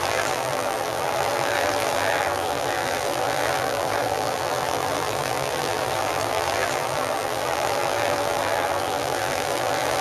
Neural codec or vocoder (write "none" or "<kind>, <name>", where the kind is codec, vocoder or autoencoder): vocoder, BigVGAN v2